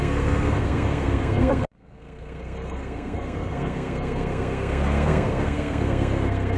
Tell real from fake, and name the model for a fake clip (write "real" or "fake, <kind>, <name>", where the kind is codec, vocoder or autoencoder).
fake, codec, SNAC